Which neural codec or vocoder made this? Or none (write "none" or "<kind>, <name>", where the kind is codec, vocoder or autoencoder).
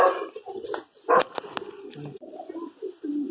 none